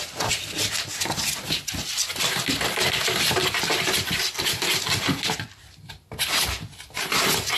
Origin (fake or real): real